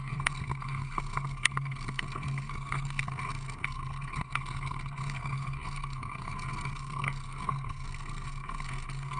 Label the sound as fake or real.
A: fake